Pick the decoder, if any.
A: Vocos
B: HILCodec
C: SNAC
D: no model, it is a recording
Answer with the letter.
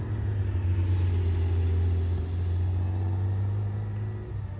D